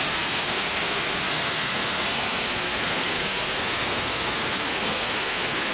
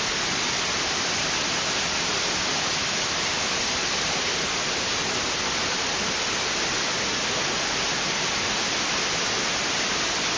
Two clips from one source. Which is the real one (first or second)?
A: second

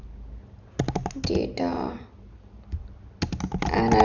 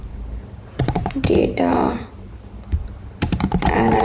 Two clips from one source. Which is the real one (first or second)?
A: first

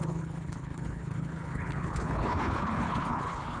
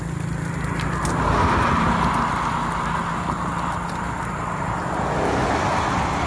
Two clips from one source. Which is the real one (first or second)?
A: second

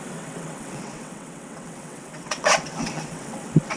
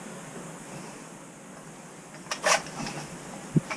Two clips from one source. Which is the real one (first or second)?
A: second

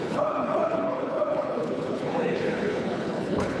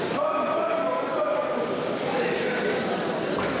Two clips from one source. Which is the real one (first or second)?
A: second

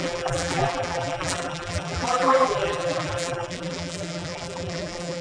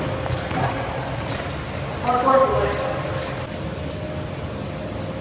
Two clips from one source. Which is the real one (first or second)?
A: second